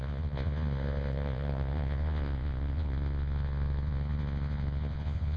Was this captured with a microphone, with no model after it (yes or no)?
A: no